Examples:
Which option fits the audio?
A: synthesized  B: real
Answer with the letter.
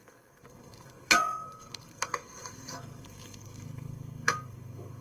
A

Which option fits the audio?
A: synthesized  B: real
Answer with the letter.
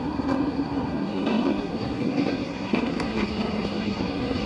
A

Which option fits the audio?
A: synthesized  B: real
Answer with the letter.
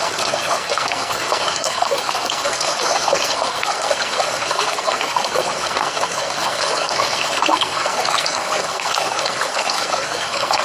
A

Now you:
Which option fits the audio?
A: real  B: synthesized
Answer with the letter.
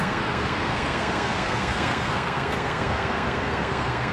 B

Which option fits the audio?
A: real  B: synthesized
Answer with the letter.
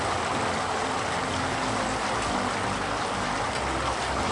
A